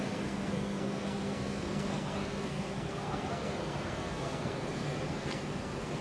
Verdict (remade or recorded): remade